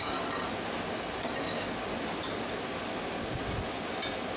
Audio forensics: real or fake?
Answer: real